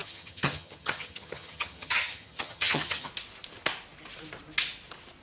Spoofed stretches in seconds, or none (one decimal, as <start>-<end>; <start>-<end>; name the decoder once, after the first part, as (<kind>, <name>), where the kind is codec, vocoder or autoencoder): 0.0-3.1 (vocoder, HiFi-GAN)